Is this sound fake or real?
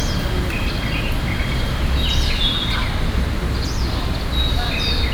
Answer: real